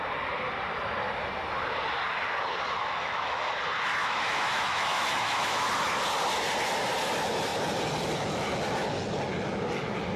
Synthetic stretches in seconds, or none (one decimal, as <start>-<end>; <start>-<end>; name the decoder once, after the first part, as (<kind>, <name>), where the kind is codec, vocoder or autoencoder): 2.8-3.5 (autoencoder, DAC-VAE); 4.0-5.7